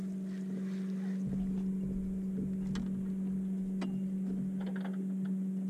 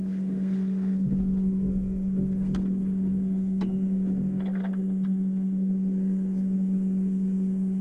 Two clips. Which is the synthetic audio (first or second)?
second